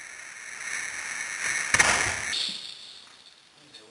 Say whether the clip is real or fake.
real